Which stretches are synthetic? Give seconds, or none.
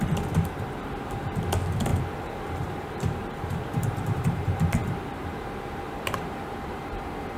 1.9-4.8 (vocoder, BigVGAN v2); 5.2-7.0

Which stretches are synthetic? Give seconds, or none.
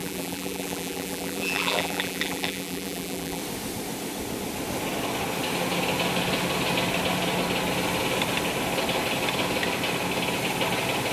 0.0-3.4 (vocoder, BigVGAN v2)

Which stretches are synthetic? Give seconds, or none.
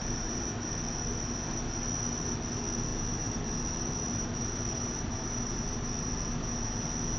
0.0-0.7 (vocoder, BigVGAN v2); 2.9-6.1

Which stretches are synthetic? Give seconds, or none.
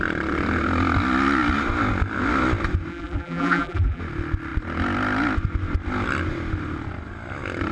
2.9-4.0 (vocoder, BigVGAN v2)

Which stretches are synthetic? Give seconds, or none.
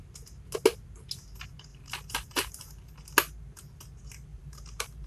1.7-3.0 (vocoder, BigVGAN v2); 4.3-5.1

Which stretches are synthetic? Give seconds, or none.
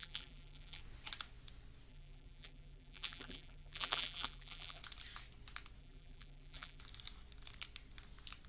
0.0-0.8 (vocoder, BigVGAN v2); 1.9-4.8; 5.8-6.8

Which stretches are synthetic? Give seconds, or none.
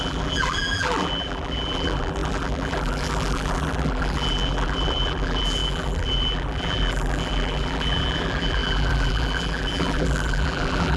0.0-11.0 (vocoder, BigVGAN v2)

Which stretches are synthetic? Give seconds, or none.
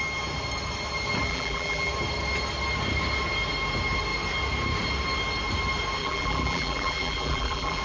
1.3-1.9 (vocoder, BigVGAN v2); 6.0-7.8